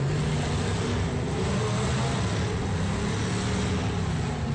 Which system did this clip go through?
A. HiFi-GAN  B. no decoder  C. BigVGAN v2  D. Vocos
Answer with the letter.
B